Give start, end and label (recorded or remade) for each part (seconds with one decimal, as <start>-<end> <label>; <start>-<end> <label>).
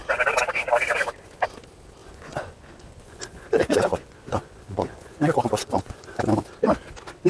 0.0-2.0 recorded; 2.0-6.2 remade; 6.2-7.3 recorded